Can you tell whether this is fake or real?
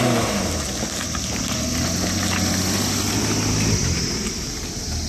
real